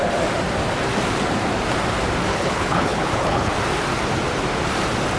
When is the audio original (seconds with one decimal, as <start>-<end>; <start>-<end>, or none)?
0.0-2.3; 3.5-5.2